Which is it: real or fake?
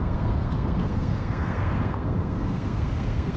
fake